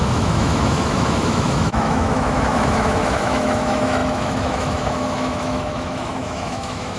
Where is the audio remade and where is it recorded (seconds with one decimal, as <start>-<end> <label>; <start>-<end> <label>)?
0.0-7.0 remade

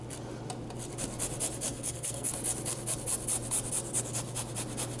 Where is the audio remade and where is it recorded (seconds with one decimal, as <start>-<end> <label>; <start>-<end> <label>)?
0.0-1.7 recorded; 1.7-2.3 remade; 2.3-5.0 recorded

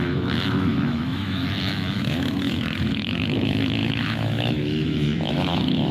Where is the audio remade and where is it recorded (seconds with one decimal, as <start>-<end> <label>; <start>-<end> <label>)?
0.0-5.9 remade

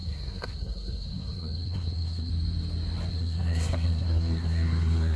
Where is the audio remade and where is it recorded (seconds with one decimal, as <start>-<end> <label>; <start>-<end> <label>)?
0.0-2.3 remade; 2.3-3.1 recorded; 3.1-5.2 remade

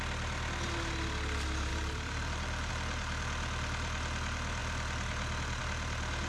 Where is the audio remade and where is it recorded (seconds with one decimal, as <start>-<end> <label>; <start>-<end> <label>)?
0.0-1.7 recorded; 1.7-2.7 remade; 2.7-6.3 recorded